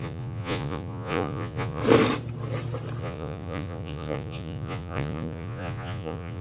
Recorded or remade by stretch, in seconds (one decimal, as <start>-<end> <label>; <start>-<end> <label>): 0.0-1.8 remade; 1.8-3.0 recorded; 3.0-6.4 remade